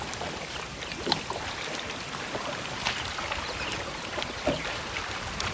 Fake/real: real